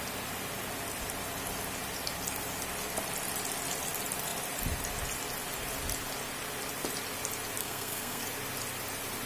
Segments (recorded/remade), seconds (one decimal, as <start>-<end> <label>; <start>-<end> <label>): 0.0-7.6 recorded; 7.6-8.2 remade; 8.2-9.3 recorded